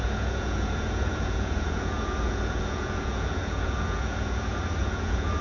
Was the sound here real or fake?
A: fake